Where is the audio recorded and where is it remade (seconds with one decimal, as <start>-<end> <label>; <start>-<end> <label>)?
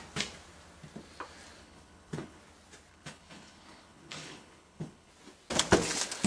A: 0.0-1.6 recorded; 1.6-2.4 remade; 2.4-2.9 recorded; 2.9-5.1 remade; 5.1-6.3 recorded